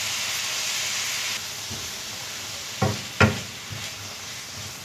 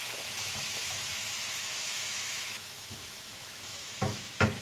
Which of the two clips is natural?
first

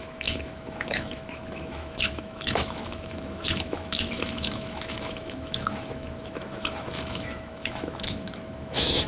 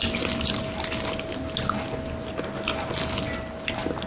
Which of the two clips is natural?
second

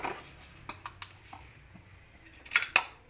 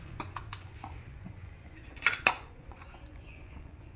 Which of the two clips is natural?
first